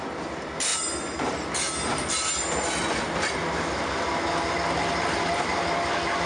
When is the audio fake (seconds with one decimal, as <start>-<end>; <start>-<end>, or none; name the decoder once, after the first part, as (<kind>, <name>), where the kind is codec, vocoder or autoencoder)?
none